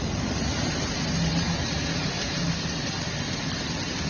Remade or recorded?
recorded